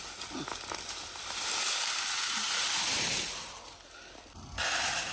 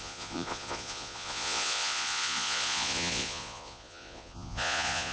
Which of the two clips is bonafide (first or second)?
first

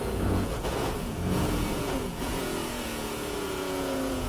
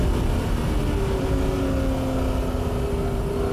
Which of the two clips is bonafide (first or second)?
second